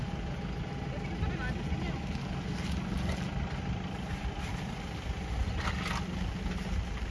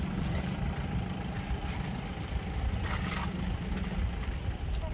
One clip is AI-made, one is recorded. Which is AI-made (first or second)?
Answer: second